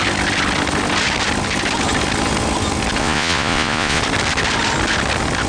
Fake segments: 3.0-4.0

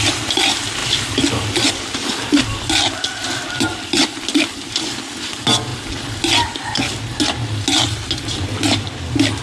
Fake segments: 3.2-5.1

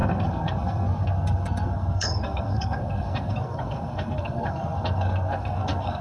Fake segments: 0.0-6.0

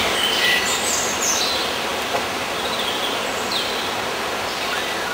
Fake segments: none

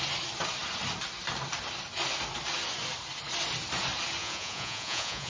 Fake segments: 4.2-5.3

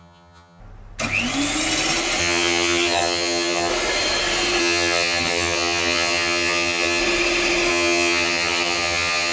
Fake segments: 0.0-0.6; 2.2-3.7; 4.6-7.0; 7.7-9.3

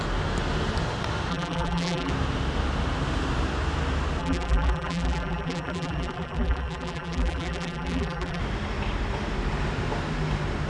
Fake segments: 1.3-2.1; 4.2-8.4